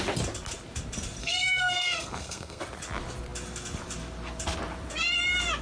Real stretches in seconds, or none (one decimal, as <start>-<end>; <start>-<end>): 0.0-1.2; 2.6-5.6